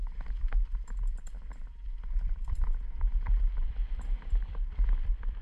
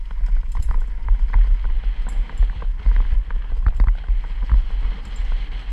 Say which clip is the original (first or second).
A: second